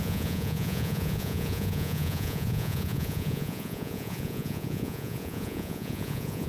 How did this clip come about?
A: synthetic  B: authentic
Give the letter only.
A